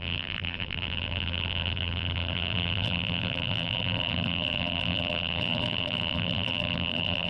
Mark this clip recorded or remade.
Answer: remade